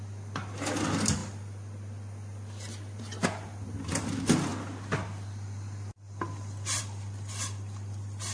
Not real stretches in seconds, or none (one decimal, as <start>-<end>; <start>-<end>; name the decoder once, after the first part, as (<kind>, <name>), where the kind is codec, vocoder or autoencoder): none